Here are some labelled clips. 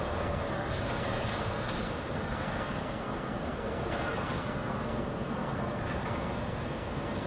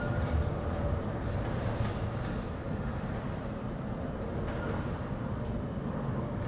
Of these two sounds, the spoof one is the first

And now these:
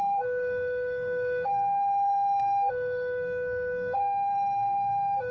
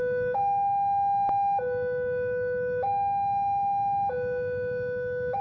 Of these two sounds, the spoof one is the first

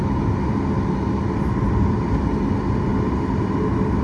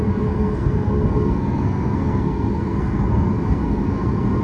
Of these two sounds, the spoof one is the second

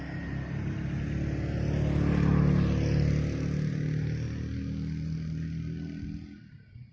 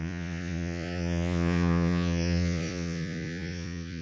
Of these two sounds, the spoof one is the second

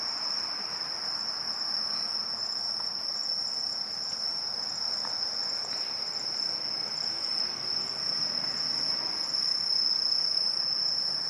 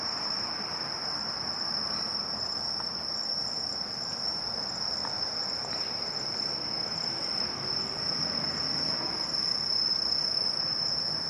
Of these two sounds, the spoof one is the second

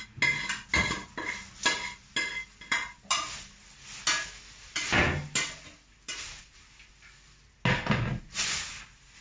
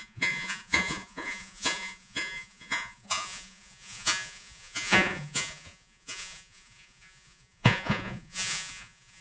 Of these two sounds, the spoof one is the second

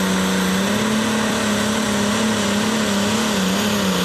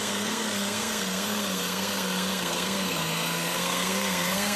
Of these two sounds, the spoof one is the second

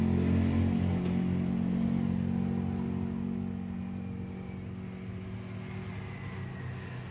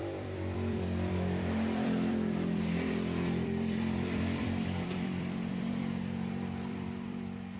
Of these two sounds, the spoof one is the second